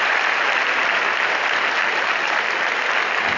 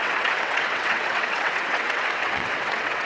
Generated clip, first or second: second